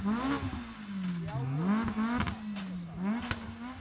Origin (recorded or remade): recorded